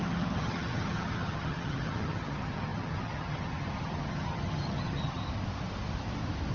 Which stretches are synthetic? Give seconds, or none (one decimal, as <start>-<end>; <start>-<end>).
0.0-5.2